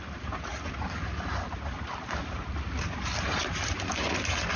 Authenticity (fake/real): real